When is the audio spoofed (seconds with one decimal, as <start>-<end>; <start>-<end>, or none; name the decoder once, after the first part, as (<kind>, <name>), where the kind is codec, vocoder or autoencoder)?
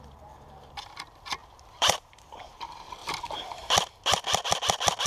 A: 1.4-2.6 (vocoder, BigVGAN v2); 3.0-3.7